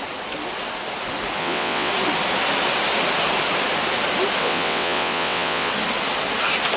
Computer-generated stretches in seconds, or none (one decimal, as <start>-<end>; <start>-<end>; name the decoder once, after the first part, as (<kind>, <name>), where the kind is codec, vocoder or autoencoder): 1.4-1.9 (vocoder, WaveNeXt); 4.4-5.7